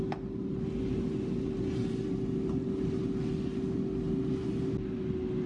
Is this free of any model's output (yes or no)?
yes